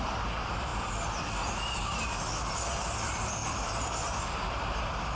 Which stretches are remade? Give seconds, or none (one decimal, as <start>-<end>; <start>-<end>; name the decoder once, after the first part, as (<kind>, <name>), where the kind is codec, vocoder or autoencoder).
3.4-5.2 (vocoder, BigVGAN v2)